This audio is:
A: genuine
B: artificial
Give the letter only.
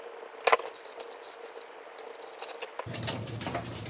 A